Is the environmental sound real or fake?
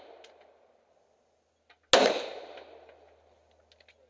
real